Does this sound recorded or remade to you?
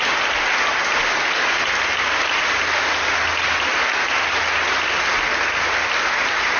recorded